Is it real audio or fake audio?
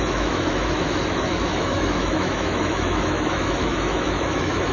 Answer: fake